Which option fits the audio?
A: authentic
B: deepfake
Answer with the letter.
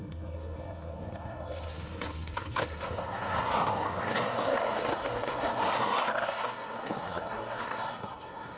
B